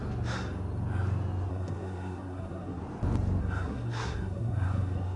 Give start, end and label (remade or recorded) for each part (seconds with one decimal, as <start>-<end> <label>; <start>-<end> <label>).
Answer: 0.0-1.5 recorded; 1.5-2.8 remade; 2.8-3.4 recorded; 3.4-5.2 remade